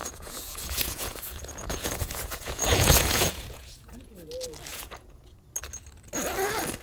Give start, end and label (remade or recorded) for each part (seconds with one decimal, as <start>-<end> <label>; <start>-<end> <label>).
0.0-4.1 remade; 4.1-4.7 recorded; 4.7-5.4 remade; 5.4-6.8 recorded